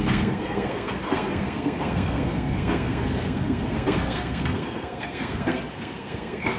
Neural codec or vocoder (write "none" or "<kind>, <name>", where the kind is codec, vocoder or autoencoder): codec, SNAC